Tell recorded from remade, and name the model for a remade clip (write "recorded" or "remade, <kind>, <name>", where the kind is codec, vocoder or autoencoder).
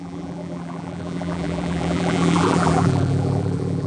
remade, vocoder, BigVGAN v2